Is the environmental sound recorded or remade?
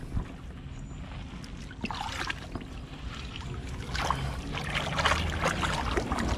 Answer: recorded